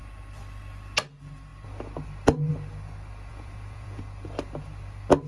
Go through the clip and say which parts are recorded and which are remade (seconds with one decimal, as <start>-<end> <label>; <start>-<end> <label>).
0.0-3.3 recorded; 3.3-4.0 remade; 4.0-5.3 recorded